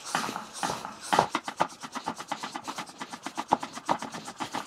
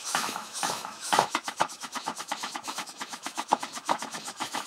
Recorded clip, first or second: first